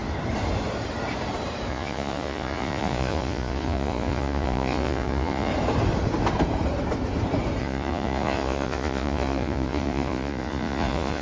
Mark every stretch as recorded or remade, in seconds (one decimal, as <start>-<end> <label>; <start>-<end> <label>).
0.0-1.7 recorded; 1.7-5.5 remade; 5.5-7.6 recorded; 7.6-11.2 remade